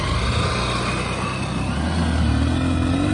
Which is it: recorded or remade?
recorded